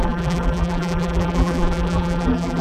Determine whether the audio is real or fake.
fake